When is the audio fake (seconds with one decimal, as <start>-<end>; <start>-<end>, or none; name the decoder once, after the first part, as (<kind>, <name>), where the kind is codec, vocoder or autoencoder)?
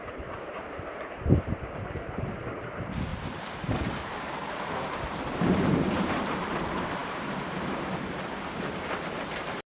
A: 0.0-9.7 (vocoder, BigVGAN v2)